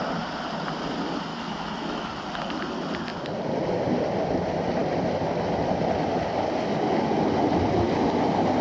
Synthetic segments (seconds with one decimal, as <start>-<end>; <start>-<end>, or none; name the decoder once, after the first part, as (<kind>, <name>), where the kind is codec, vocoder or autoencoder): 1.3-2.1 (autoencoder, DAC-VAE)